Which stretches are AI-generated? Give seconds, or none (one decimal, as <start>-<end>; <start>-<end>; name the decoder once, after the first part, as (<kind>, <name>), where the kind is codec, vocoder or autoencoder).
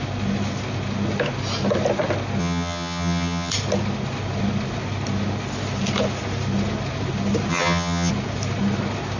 2.4-3.5 (vocoder, HiFi-GAN); 7.5-8.1